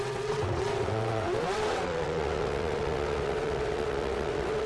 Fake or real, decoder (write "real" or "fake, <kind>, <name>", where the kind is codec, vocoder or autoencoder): fake, vocoder, WaveNeXt